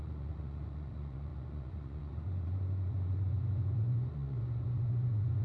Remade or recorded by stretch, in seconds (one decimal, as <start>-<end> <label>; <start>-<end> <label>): 0.0-5.4 remade